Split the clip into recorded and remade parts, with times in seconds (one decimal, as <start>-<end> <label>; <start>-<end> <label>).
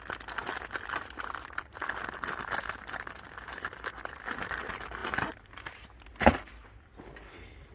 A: 0.0-7.7 recorded